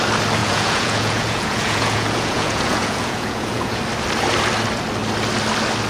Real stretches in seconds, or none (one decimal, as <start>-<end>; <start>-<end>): 0.0-0.4; 3.8-5.9

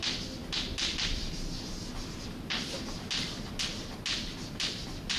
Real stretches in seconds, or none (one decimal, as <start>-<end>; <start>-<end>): 0.0-5.2

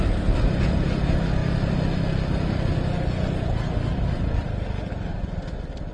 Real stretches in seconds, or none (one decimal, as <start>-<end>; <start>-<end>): 0.0-5.9

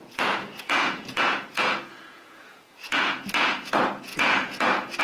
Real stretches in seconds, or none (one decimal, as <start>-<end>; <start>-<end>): none

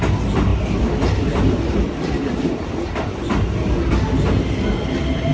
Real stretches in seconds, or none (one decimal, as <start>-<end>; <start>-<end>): 0.0-5.3

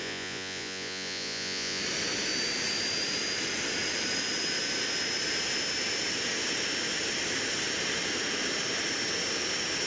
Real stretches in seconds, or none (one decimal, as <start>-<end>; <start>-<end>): 1.8-9.9

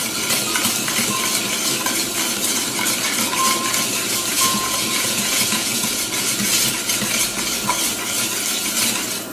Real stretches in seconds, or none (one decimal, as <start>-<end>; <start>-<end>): 0.0-4.3; 6.5-9.3